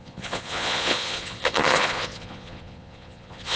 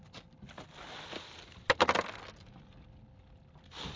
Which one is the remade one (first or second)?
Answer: first